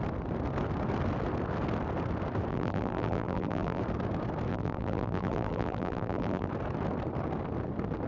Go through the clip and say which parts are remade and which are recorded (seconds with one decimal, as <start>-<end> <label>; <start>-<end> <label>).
0.0-2.5 recorded; 2.5-3.8 remade; 3.8-4.5 recorded; 4.5-6.5 remade; 6.5-8.1 recorded